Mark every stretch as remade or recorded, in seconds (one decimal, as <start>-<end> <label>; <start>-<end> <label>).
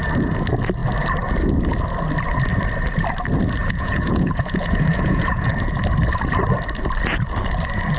0.0-3.6 recorded; 3.6-5.5 remade; 5.5-8.0 recorded